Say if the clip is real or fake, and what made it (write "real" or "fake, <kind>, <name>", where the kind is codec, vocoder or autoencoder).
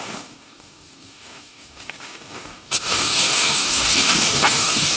fake, codec, DAC